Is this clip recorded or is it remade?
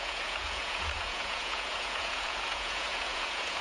remade